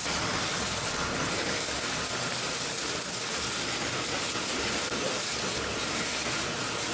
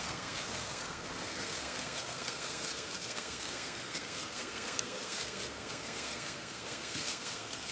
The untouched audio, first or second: first